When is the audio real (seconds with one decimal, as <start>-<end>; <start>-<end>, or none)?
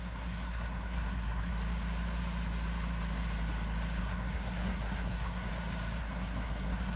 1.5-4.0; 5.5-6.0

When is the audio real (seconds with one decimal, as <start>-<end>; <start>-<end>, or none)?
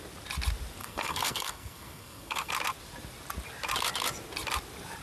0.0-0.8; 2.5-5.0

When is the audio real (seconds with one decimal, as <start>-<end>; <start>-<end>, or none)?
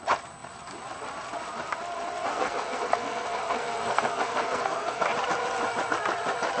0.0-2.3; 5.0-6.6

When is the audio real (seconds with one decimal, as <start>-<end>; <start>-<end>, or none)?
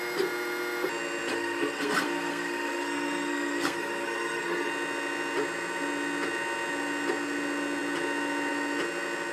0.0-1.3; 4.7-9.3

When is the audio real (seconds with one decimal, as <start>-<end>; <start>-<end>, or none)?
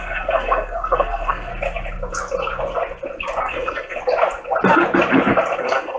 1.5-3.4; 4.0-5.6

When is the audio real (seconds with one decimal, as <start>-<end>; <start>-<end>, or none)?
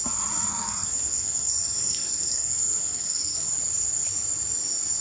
0.0-0.5; 3.5-5.0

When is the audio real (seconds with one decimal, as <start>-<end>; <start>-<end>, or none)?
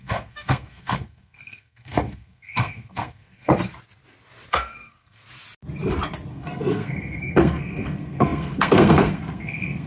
3.5-4.5; 5.2-6.3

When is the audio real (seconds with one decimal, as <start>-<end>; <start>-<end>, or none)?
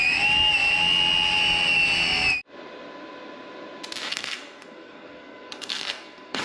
0.0-4.1